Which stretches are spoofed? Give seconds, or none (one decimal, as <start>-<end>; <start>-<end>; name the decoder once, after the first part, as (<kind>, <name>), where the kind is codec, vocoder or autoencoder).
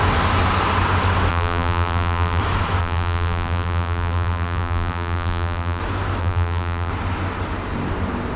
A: 1.3-2.4 (vocoder, BigVGAN v2); 2.8-5.8; 6.2-6.9